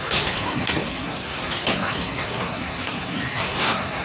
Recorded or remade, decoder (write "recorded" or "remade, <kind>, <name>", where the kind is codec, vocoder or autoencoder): remade, codec, SNAC